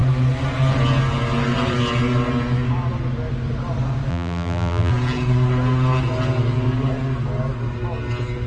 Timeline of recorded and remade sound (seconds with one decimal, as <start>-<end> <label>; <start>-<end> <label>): 0.0-4.1 recorded; 4.1-4.9 remade; 4.9-8.5 recorded